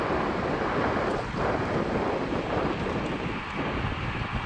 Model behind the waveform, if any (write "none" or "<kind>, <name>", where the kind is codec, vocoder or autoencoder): none